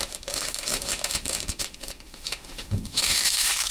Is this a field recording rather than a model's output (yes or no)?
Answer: no